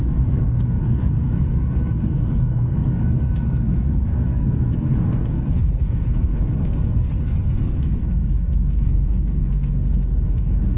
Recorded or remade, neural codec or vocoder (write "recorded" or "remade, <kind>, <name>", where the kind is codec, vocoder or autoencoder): remade, codec, SNAC